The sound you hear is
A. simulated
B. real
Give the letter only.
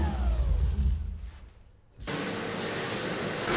B